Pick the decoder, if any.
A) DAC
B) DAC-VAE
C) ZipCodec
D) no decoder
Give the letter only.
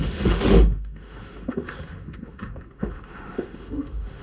B